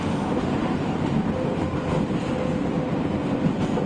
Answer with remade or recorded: recorded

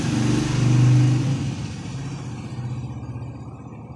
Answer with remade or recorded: recorded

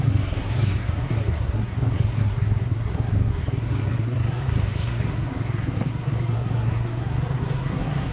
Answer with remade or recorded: remade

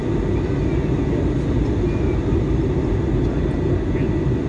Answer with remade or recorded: recorded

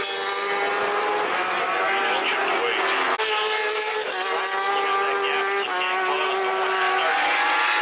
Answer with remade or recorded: recorded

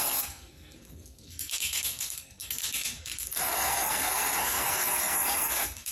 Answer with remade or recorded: remade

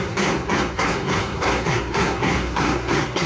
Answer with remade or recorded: remade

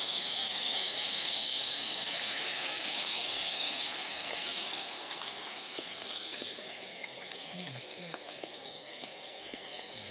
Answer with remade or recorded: remade